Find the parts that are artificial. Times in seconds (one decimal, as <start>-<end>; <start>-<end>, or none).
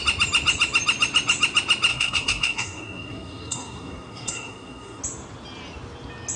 1.9-5.0